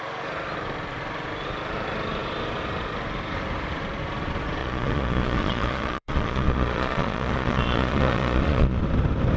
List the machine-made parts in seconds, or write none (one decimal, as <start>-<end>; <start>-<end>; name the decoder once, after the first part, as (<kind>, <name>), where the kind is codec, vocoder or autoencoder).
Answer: 4.6-8.8 (vocoder, Vocos)